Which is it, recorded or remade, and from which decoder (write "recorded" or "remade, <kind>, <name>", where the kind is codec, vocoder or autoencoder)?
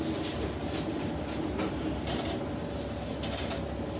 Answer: recorded